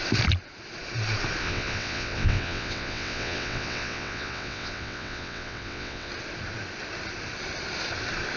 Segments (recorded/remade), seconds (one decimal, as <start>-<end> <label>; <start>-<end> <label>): 0.0-1.4 recorded; 1.4-6.1 remade; 6.1-8.4 recorded